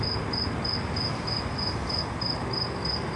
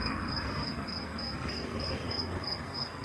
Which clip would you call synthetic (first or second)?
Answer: second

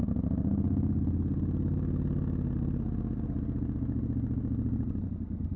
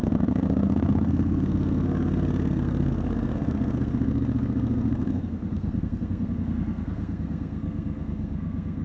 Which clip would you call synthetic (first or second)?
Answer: second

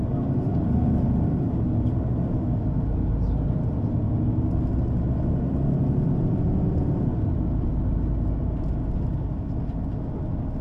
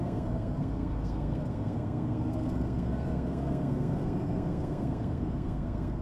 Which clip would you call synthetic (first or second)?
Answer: second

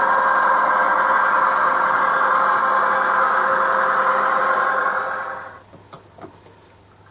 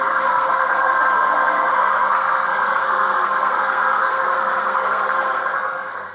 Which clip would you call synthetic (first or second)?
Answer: second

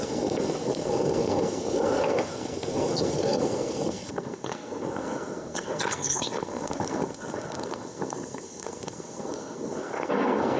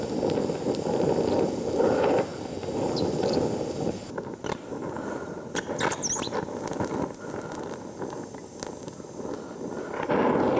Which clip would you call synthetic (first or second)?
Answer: first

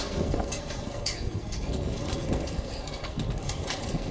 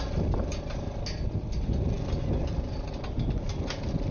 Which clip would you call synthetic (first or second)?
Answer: first